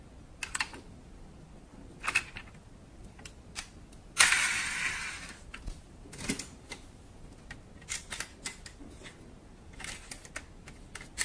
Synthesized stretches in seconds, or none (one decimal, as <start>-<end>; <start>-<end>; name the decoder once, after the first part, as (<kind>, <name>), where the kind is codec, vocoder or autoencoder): none